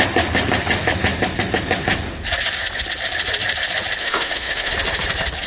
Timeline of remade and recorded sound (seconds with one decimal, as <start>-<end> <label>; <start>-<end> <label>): 0.0-4.0 recorded; 4.0-4.7 remade; 4.7-5.5 recorded